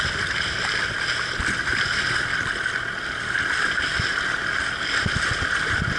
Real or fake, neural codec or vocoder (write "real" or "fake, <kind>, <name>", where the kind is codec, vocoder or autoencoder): real